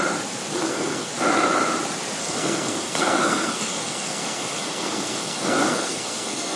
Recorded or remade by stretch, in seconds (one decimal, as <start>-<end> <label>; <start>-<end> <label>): 0.0-0.5 recorded; 0.5-1.1 remade; 1.1-2.2 recorded; 2.2-6.6 remade